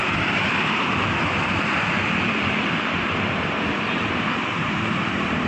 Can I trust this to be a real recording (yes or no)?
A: no